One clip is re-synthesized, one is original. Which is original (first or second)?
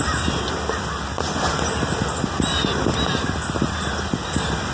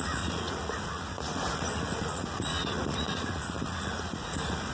first